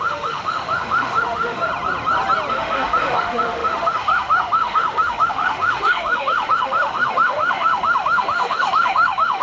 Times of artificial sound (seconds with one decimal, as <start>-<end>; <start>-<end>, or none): 0.0-1.7; 2.5-9.4